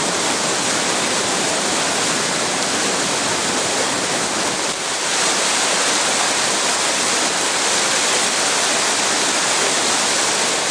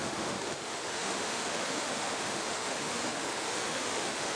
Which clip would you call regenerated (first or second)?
second